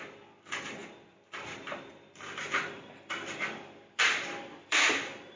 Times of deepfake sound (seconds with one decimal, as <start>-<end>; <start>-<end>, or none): 0.0-5.4